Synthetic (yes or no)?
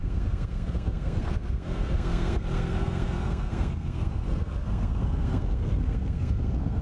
yes